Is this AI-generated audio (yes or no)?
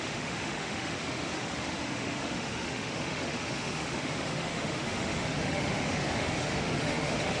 yes